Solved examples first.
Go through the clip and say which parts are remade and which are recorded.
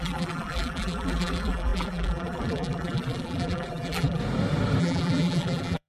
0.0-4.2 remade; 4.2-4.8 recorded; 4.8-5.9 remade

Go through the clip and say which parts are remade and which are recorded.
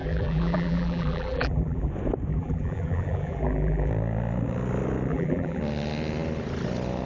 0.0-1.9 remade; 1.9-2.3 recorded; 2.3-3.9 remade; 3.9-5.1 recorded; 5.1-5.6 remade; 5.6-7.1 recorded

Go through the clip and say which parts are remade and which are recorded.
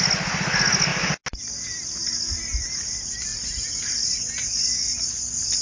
0.0-5.6 recorded